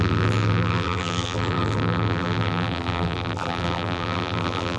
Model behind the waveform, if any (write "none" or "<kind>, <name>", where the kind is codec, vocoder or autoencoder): vocoder, BigVGAN v2